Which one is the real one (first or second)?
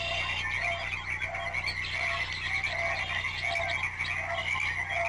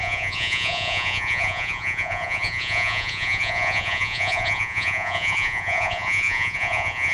first